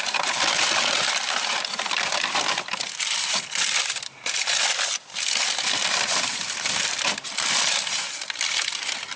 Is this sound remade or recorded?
remade